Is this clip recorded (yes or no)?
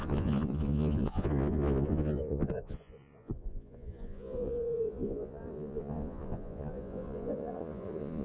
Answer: no